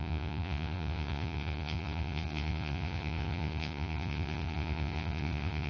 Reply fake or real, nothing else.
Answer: fake